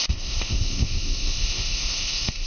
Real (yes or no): no